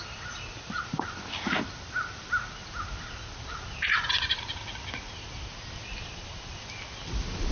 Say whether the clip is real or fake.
real